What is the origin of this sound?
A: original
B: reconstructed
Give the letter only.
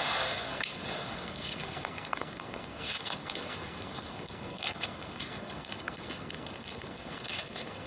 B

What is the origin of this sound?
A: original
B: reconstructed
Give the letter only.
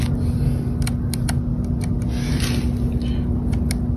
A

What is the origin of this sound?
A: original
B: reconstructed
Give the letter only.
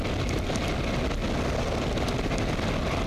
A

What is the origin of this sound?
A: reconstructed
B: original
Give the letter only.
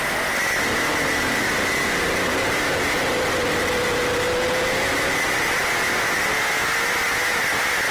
B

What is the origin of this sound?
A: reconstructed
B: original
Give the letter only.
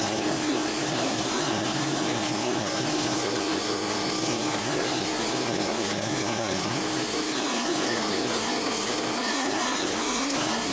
A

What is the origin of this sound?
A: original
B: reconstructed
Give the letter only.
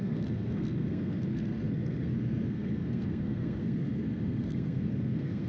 B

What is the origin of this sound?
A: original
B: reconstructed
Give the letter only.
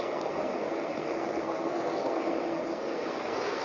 B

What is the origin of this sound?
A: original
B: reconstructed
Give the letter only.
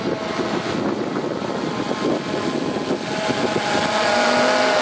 A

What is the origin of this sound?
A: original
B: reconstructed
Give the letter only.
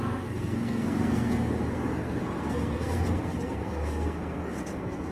B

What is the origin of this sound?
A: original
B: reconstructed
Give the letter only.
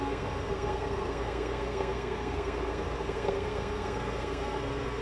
B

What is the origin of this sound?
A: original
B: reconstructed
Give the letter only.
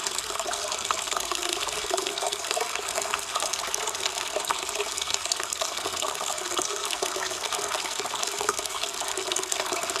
B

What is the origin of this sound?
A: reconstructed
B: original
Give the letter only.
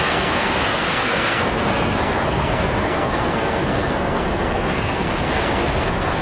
A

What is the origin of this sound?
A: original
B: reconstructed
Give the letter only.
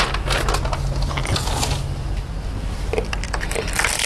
A